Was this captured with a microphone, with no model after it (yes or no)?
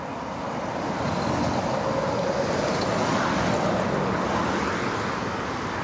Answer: yes